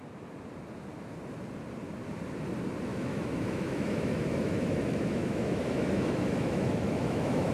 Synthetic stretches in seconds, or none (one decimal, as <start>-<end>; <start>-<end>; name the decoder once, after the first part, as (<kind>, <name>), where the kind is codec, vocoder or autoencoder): 2.9-7.5 (autoencoder, DAC-VAE)